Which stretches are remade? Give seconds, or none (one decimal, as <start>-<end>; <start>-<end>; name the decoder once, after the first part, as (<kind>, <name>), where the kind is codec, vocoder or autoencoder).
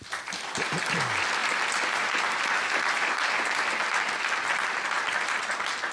none